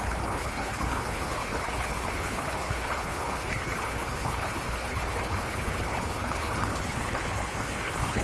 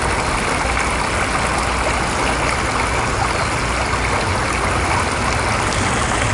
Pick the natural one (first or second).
second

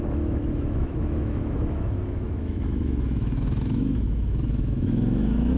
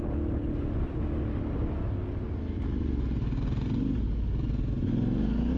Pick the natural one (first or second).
second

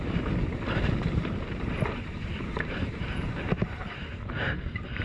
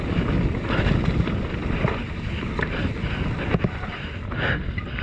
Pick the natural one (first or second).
second